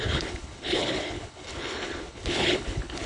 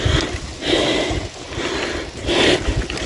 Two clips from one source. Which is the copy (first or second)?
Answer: first